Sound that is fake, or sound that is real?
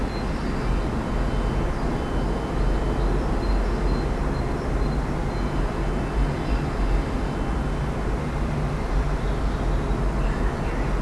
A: real